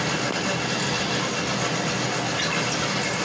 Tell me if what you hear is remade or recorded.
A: recorded